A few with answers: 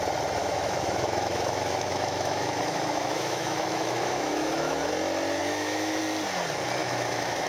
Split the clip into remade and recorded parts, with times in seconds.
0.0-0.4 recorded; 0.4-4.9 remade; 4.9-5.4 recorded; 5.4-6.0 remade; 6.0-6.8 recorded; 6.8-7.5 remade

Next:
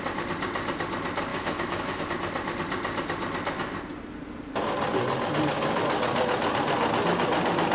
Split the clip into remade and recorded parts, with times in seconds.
0.0-1.3 recorded; 1.3-2.0 remade; 2.0-7.7 recorded